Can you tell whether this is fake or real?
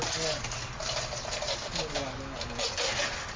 real